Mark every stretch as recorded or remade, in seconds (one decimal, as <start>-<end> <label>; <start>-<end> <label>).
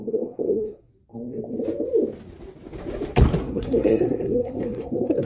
0.0-0.9 remade; 0.9-3.5 recorded; 3.5-5.3 remade